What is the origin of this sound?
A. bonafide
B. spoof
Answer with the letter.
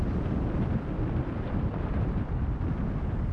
A